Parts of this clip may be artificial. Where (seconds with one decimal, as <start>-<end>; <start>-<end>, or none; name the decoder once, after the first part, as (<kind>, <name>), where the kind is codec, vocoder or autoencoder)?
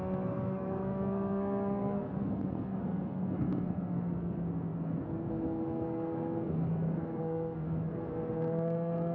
0.0-9.1 (codec, SNAC)